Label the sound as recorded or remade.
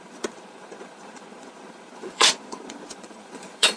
remade